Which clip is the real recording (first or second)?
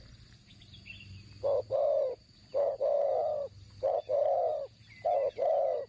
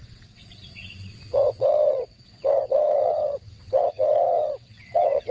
first